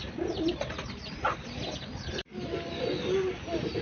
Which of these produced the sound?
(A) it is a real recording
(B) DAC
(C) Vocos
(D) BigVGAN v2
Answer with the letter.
D